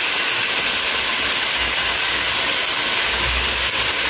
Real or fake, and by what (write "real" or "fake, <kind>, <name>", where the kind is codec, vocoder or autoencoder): real